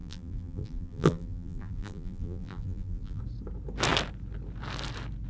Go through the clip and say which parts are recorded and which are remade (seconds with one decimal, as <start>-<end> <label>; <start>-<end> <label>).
0.0-3.2 remade; 3.2-5.3 recorded